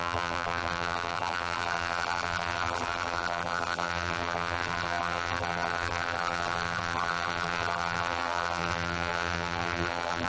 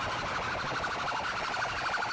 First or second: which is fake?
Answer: first